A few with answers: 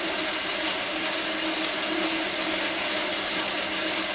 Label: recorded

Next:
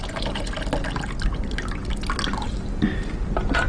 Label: recorded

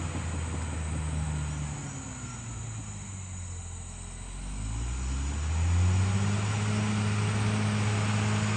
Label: recorded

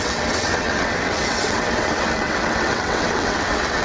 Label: remade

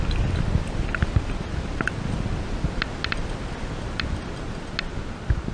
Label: recorded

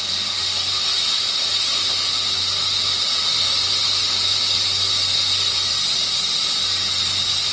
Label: recorded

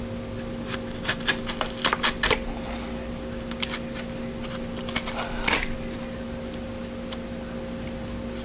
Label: recorded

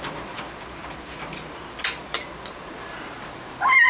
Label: recorded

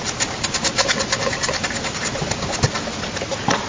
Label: recorded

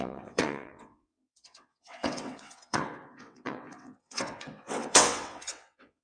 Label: remade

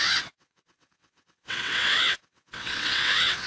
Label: remade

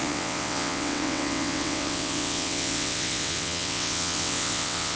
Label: remade